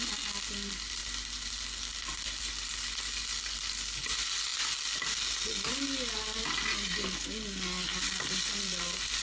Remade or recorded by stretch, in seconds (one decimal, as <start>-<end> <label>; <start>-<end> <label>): 0.0-9.2 recorded